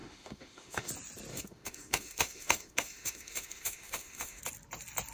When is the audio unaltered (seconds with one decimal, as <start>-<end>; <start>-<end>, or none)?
0.9-1.3; 4.4-5.1